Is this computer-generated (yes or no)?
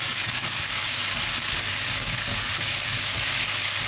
yes